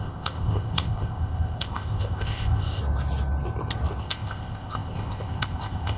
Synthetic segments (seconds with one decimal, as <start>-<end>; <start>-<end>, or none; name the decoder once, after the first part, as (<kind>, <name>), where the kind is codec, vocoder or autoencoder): 0.0-2.8 (codec, ZipCodec); 4.0-6.0

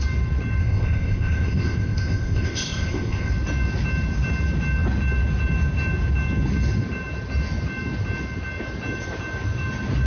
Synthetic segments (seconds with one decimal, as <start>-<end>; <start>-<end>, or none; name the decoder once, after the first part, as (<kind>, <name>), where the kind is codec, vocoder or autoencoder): 0.6-3.3 (codec, ZipCodec)

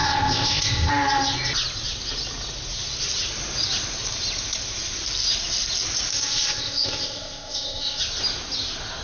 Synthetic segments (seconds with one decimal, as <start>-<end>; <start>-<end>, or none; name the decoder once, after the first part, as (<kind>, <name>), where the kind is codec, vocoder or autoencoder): 0.0-0.9 (codec, ZipCodec); 6.1-8.0

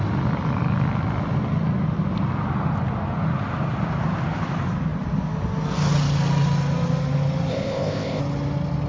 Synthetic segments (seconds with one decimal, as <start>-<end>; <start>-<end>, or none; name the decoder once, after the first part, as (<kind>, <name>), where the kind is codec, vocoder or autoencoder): 7.5-8.2 (codec, ZipCodec)

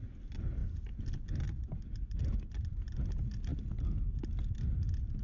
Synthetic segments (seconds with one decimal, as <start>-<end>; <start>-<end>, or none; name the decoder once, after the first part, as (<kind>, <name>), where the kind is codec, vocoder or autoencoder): none

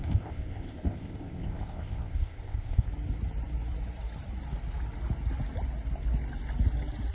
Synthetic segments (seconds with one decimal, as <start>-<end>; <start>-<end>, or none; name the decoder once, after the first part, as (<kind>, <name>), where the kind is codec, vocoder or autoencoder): 0.0-2.9 (codec, ZipCodec)

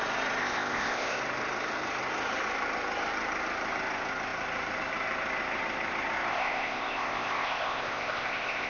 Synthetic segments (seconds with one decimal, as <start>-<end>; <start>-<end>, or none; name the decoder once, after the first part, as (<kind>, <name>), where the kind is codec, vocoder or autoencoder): 0.4-1.2 (codec, ZipCodec); 6.3-8.7

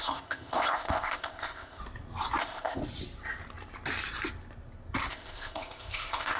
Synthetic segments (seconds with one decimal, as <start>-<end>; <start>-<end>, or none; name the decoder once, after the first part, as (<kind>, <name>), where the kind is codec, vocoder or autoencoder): 0.0-1.8 (codec, ZipCodec); 2.4-2.8; 5.1-6.4